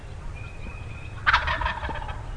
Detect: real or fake real